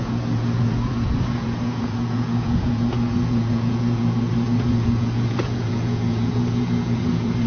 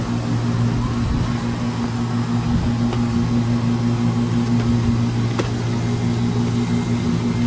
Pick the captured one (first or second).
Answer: second